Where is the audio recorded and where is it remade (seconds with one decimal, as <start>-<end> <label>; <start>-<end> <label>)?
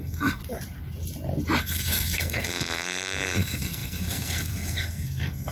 0.0-0.4 remade; 0.4-1.6 recorded; 1.6-5.5 remade